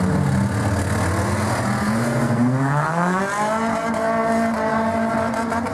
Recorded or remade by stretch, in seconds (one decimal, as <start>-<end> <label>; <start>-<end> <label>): 0.0-2.0 recorded; 2.0-3.2 remade; 3.2-5.7 recorded